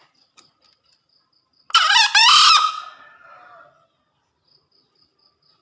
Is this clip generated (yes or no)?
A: no